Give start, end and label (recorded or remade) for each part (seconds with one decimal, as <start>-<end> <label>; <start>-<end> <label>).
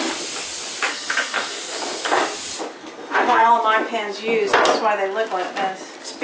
0.0-0.9 recorded; 0.9-2.2 remade; 2.2-2.8 recorded; 2.8-3.5 remade; 3.5-6.2 recorded